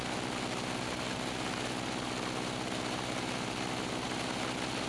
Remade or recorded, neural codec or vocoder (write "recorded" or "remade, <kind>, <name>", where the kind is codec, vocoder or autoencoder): recorded